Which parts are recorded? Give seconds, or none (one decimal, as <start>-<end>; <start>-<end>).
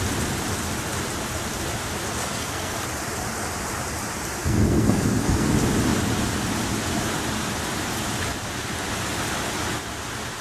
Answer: 0.0-2.2; 2.8-4.4; 5.5-10.4